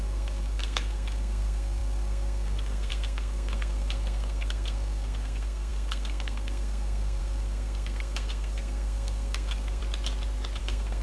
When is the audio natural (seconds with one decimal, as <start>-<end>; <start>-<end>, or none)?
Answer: 9.8-10.6